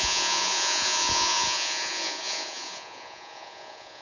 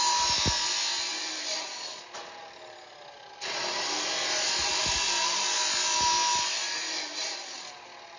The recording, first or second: second